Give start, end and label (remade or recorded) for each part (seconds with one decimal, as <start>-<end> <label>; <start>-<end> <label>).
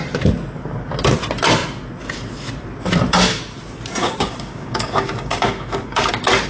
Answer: 0.0-4.0 recorded; 4.0-6.1 remade; 6.1-6.5 recorded